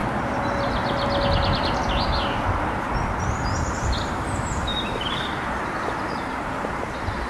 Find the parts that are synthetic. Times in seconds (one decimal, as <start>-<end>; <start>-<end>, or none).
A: 3.5-7.3